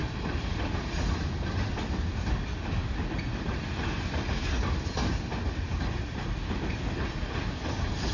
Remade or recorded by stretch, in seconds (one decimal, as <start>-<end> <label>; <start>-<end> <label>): 0.0-8.1 recorded

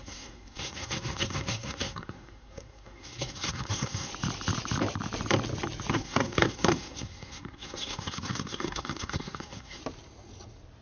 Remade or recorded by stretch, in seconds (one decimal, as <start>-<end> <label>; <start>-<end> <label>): 0.0-4.1 remade; 4.1-5.9 recorded; 5.9-9.8 remade; 9.8-10.8 recorded

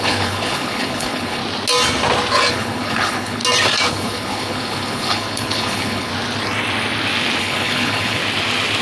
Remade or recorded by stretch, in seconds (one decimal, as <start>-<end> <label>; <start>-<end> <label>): 0.0-1.4 remade; 1.4-2.5 recorded; 2.5-3.4 remade; 3.4-3.9 recorded; 3.9-6.1 remade; 6.1-7.4 recorded; 7.4-8.2 remade; 8.2-8.8 recorded